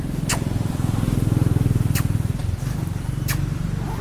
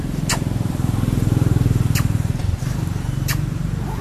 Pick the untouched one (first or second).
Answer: first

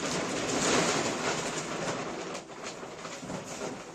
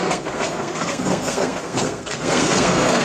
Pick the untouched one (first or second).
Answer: first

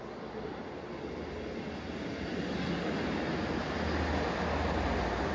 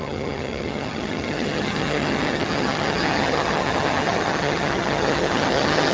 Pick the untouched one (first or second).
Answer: first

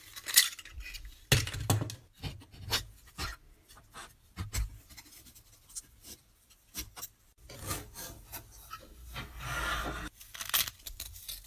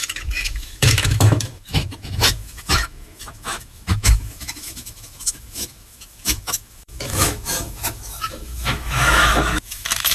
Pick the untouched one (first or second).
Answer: first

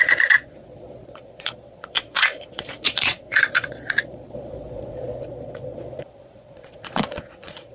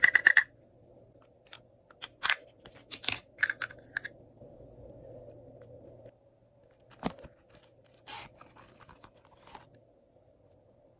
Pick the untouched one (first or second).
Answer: second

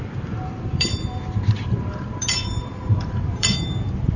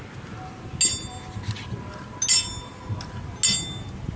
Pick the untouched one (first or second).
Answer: second